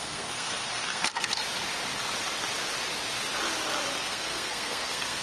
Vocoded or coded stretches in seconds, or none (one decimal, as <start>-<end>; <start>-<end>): 0.0-1.4; 3.9-5.2